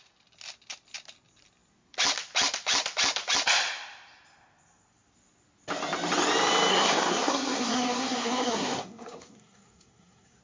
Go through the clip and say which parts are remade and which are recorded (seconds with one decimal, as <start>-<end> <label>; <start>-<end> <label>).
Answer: 0.0-6.7 recorded; 6.7-10.4 remade